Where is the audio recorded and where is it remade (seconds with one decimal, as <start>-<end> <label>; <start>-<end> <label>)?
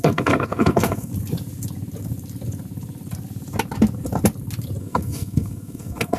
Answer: 0.0-1.1 remade; 1.1-4.8 recorded; 4.8-6.2 remade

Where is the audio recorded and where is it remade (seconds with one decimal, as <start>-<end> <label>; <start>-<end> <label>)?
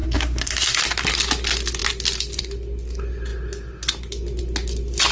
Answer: 0.0-0.8 remade; 0.8-5.1 recorded